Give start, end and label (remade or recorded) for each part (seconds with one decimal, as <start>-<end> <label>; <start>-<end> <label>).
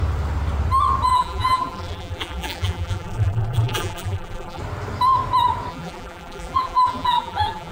0.0-1.1 recorded; 1.1-4.6 remade; 4.6-5.7 recorded; 5.7-7.7 remade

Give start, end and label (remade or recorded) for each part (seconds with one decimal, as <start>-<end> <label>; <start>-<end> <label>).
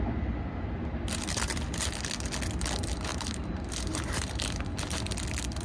0.0-3.1 recorded; 3.1-4.8 remade; 4.8-5.6 recorded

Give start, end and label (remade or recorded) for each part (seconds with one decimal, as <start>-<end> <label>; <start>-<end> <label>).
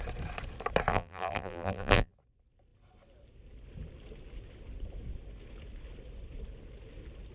0.0-0.9 recorded; 0.9-2.1 remade; 2.1-7.3 recorded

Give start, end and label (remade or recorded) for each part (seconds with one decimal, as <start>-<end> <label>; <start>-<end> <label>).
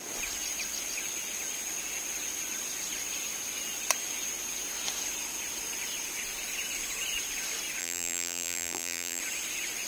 0.0-7.8 recorded; 7.8-9.2 remade; 9.2-9.9 recorded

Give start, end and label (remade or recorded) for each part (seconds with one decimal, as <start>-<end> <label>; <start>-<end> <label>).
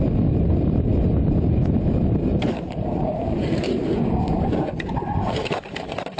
0.0-2.3 recorded; 2.3-6.2 remade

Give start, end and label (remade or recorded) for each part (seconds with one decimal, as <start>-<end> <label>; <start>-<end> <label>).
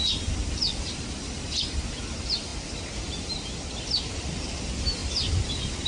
0.0-0.7 recorded; 0.7-5.9 remade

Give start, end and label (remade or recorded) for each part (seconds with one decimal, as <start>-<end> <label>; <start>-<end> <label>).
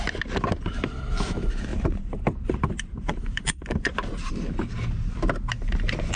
0.0-1.7 recorded; 1.7-4.3 remade; 4.3-6.2 recorded